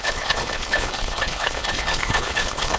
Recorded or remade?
remade